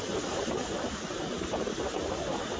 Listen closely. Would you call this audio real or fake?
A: real